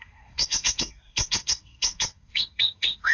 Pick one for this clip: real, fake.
fake